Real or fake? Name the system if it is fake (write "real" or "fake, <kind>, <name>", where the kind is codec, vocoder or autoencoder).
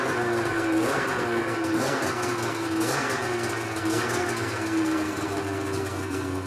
fake, codec, SNAC